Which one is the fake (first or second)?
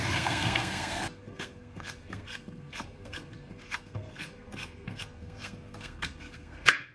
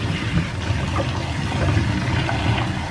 first